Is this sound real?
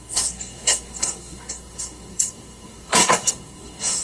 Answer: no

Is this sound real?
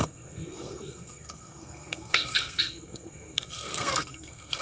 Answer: no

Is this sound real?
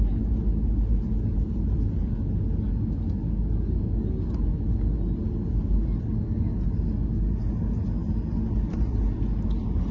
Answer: yes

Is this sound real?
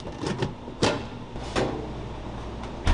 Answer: yes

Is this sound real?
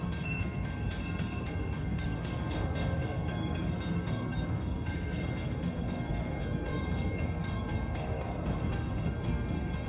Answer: no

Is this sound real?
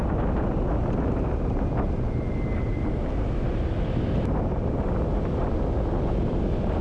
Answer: yes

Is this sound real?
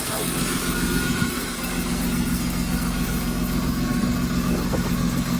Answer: no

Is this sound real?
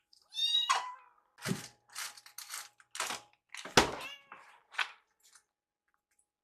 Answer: yes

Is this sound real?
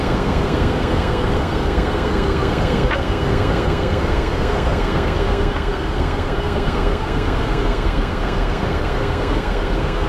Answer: no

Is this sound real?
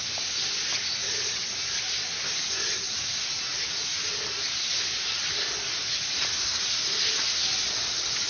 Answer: yes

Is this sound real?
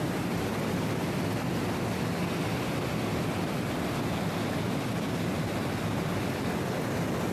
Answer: yes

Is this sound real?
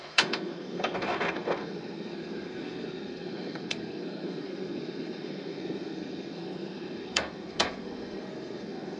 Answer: no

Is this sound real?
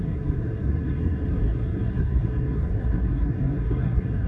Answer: no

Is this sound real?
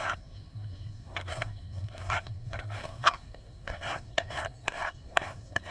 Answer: no